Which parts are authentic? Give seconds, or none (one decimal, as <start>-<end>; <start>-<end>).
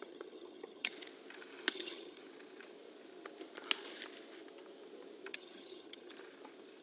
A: 0.9-1.7; 2.2-5.3; 6.1-6.8